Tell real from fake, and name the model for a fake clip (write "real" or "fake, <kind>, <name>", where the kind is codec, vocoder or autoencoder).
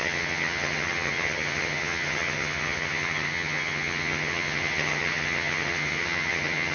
fake, vocoder, HiFi-GAN